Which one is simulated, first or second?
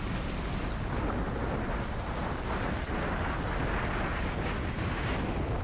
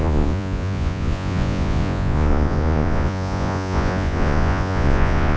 second